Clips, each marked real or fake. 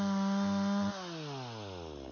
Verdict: real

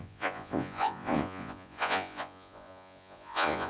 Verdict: fake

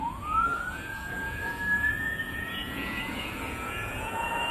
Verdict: fake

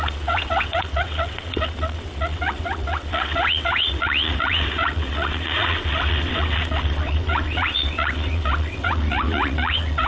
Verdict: fake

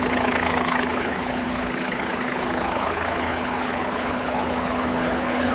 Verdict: fake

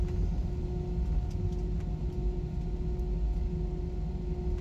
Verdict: real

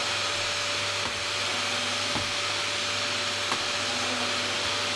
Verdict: real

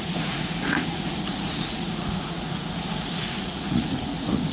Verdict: fake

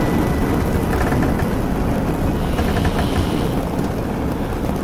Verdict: real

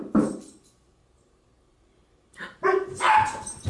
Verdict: fake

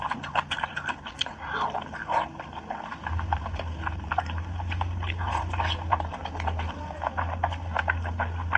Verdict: real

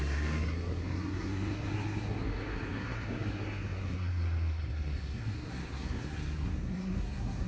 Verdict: fake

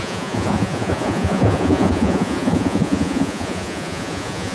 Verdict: fake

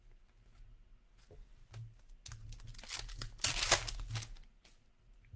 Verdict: real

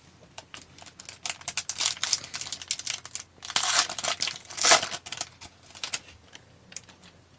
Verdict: real